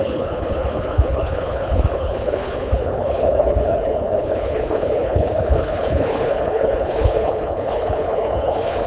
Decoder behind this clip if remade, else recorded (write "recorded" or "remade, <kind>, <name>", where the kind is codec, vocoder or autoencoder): remade, codec, HILCodec